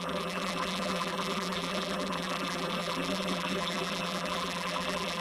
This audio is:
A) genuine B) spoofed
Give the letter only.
B